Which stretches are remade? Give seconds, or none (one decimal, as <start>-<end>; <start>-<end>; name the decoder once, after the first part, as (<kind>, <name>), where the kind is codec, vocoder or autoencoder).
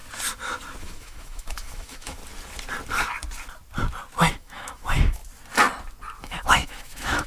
0.8-2.2 (autoencoder, DAC-VAE); 4.3-5.2; 6.2-7.3